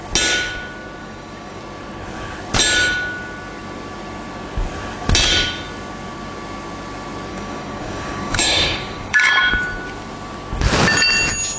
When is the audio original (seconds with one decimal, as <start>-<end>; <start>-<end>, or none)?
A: 0.0-1.0; 1.6-7.3; 9.5-11.6